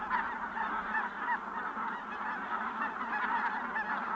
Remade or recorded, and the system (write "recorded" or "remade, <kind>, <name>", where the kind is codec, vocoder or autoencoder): recorded